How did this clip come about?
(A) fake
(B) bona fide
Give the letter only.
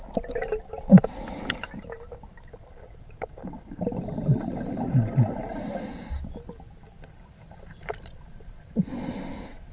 B